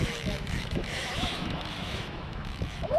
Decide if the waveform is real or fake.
fake